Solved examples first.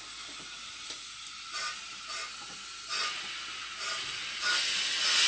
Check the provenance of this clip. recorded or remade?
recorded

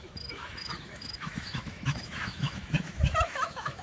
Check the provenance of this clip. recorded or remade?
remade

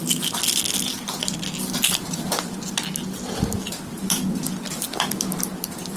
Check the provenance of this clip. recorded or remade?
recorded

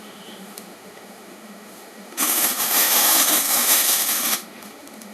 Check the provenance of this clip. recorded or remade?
remade